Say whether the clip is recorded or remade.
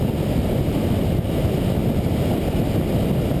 recorded